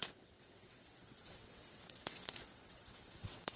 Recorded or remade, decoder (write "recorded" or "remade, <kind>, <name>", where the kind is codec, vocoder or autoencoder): remade, vocoder, WaveNeXt